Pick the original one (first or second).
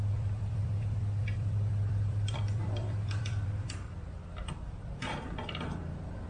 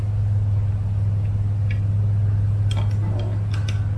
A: second